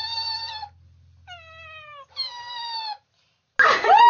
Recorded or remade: recorded